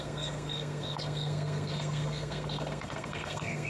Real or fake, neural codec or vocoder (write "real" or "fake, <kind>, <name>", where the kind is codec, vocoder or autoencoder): fake, codec, SNAC